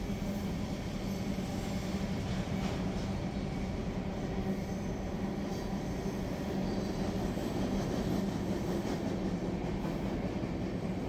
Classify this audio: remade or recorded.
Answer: recorded